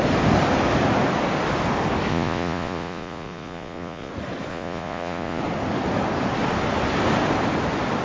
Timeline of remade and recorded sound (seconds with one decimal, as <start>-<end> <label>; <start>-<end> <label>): 0.0-2.1 recorded; 2.1-4.1 remade; 4.1-4.5 recorded; 4.5-5.4 remade; 5.4-8.0 recorded